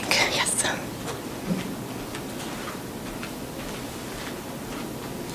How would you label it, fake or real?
real